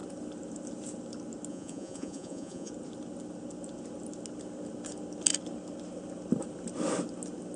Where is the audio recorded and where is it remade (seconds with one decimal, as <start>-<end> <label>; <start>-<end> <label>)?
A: 0.0-1.5 recorded; 1.5-2.7 remade; 2.7-7.6 recorded